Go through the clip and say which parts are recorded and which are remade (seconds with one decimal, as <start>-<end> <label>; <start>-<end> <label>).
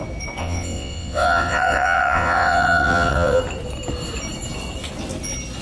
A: 0.0-0.4 recorded; 0.4-3.4 remade; 3.4-5.6 recorded